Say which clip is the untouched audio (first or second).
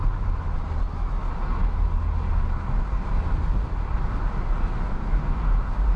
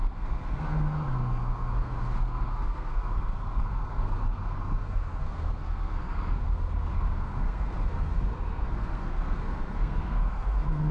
first